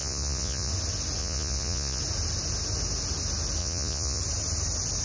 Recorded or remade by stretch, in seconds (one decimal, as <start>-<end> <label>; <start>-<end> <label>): 0.0-0.7 remade; 0.7-1.2 recorded; 1.2-2.0 remade; 2.0-3.6 recorded; 3.6-4.2 remade; 4.2-5.0 recorded